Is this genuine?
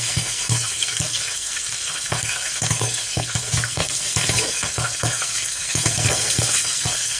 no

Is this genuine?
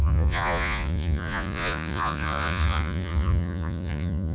no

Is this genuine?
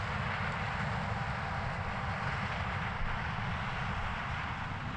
yes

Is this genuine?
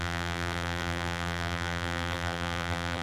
no